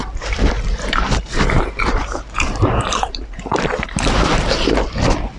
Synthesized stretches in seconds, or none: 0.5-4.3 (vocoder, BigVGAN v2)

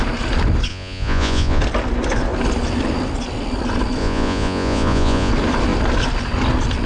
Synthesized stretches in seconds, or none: 0.7-1.6 (vocoder, Vocos); 4.0-5.3

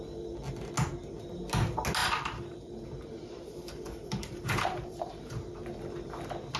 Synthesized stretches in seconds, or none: 2.0-5.8 (vocoder, BigVGAN v2)

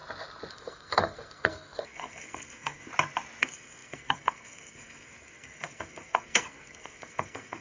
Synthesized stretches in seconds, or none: 0.5-2.9 (codec, SNAC); 3.4-7.6

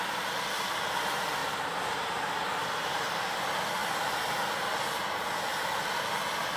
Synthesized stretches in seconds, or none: 1.4-3.2 (vocoder, BigVGAN v2)

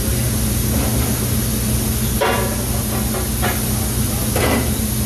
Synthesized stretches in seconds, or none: none

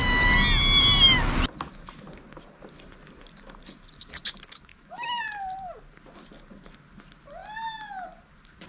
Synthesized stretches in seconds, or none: 4.7-5.2 (autoencoder, DAC-VAE)

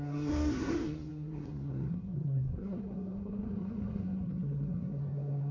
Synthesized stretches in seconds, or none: 0.0-5.5 (codec, SNAC)